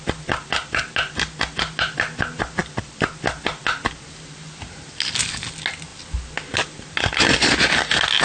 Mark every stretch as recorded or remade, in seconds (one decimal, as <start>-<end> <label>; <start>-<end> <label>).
0.0-8.2 recorded